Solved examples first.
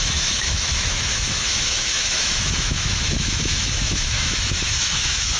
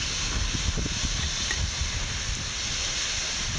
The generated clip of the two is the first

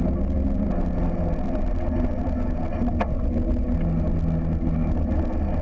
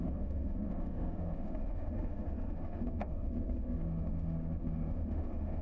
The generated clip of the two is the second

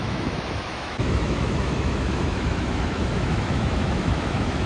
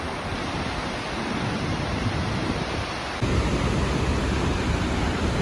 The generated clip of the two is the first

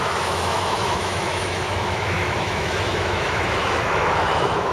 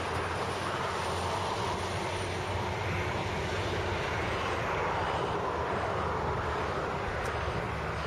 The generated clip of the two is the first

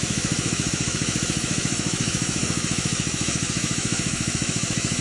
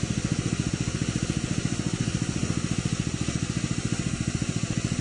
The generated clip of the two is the first